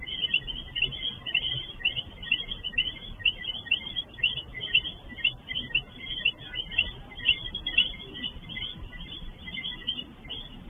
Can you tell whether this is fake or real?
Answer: real